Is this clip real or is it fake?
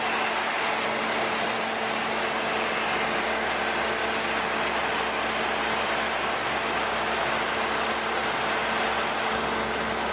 real